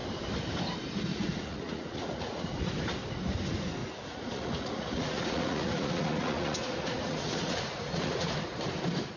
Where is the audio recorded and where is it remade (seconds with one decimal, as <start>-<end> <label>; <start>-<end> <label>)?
0.0-1.1 recorded; 1.1-2.7 remade; 2.7-3.8 recorded; 3.8-8.3 remade; 8.3-9.2 recorded